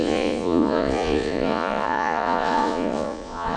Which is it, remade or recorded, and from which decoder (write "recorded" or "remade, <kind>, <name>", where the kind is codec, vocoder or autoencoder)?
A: remade, vocoder, Vocos